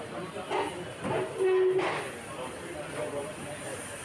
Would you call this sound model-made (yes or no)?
no